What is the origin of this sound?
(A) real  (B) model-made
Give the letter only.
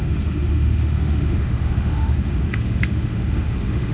B